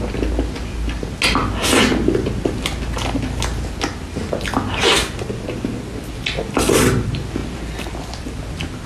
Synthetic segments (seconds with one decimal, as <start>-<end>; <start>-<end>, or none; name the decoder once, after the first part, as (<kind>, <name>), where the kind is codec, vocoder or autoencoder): none